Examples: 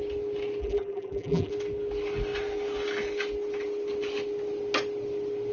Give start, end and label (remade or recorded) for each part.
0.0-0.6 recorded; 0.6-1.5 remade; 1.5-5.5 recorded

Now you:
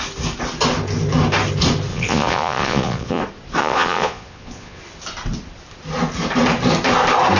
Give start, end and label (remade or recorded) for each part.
0.0-1.9 recorded; 1.9-3.2 remade; 3.2-3.6 recorded; 3.6-4.8 remade; 4.8-7.4 recorded